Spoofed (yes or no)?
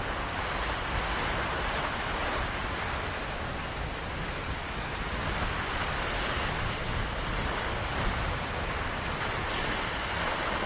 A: no